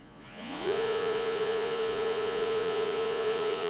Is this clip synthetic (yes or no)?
yes